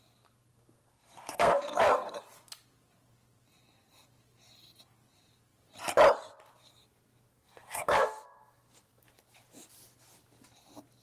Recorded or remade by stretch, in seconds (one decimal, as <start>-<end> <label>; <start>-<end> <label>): 0.0-0.5 recorded; 0.5-2.2 remade; 2.2-7.3 recorded; 7.3-9.1 remade; 9.1-11.0 recorded